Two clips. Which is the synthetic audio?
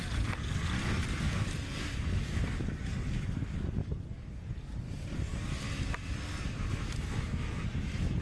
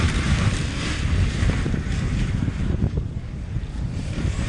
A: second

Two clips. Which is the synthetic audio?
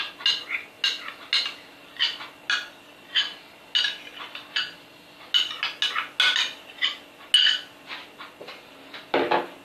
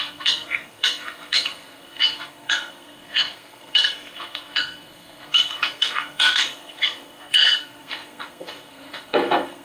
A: second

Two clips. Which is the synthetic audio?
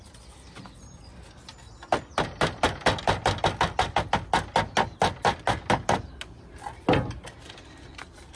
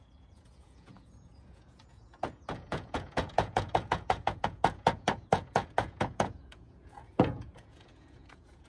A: second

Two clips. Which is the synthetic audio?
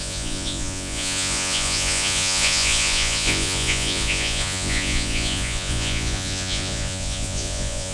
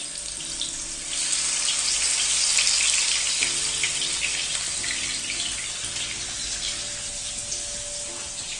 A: first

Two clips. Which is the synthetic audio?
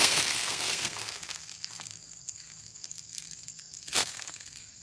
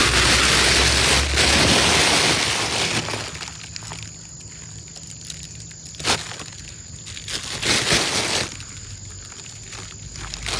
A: first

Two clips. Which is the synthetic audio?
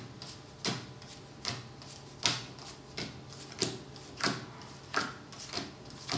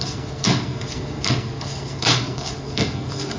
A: second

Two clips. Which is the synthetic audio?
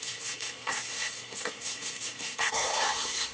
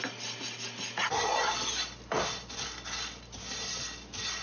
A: first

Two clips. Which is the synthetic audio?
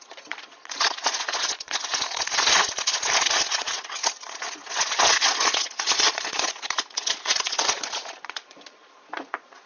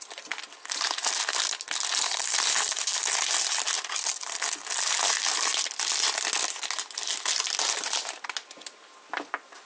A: first